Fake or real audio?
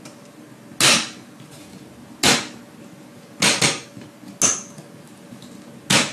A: real